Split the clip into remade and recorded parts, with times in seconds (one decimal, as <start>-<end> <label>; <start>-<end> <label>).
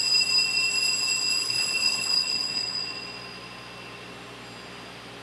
0.0-1.4 recorded; 1.4-2.8 remade; 2.8-5.2 recorded